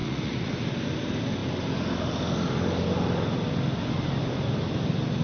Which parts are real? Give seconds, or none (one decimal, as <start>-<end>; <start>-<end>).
0.5-5.2